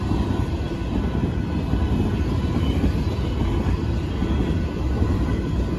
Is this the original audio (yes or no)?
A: yes